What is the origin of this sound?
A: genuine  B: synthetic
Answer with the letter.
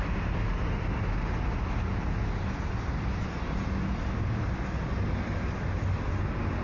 A